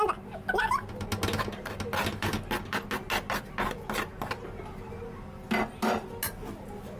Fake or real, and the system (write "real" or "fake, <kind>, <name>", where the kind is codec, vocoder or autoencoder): real